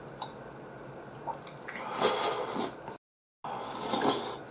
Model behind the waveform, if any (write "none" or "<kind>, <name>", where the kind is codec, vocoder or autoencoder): none